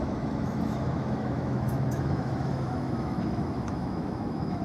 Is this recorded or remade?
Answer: remade